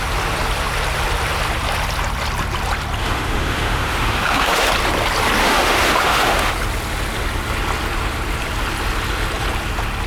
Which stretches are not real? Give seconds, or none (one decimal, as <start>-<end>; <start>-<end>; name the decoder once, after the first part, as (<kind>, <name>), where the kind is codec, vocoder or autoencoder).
3.0-4.7 (autoencoder, DAC-VAE); 5.4-6.5